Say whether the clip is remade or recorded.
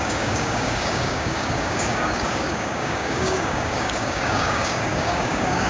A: remade